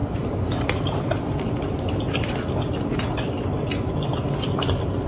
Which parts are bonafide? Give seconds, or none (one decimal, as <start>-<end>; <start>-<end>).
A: 2.5-4.1